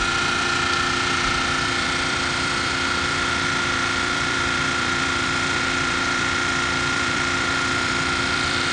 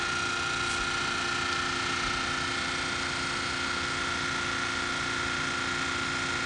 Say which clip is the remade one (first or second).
first